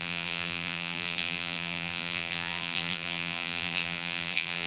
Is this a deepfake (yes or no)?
yes